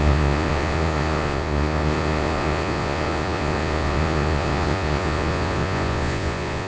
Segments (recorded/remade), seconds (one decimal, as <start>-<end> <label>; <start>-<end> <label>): 0.0-6.7 remade